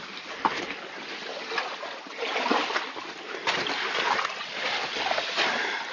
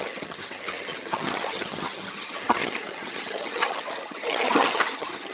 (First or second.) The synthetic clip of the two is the second